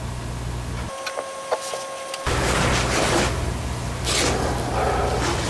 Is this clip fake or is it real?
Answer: real